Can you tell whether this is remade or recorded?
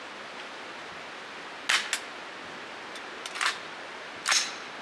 recorded